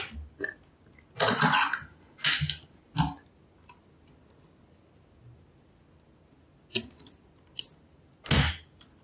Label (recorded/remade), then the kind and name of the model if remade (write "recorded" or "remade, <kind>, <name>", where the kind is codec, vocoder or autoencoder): recorded